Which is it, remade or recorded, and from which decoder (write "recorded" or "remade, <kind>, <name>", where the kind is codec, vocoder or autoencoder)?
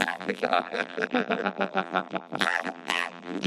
remade, vocoder, BigVGAN v2